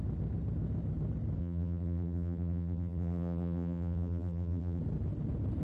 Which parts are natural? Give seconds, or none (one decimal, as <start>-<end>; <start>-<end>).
0.0-1.4; 4.8-5.6